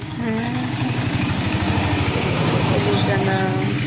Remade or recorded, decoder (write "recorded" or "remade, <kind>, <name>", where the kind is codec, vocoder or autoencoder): remade, codec, DAC